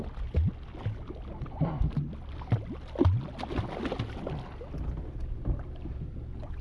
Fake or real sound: real